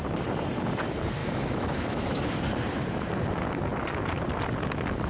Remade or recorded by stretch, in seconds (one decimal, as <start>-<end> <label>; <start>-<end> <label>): 0.0-1.2 recorded; 1.2-2.3 remade; 2.3-5.1 recorded